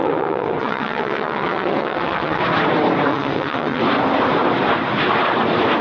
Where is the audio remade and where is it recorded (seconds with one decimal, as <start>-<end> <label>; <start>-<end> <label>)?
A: 0.0-2.4 remade; 2.4-3.1 recorded; 3.1-3.8 remade; 3.8-5.8 recorded